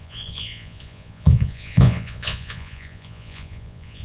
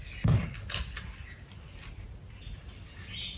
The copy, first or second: first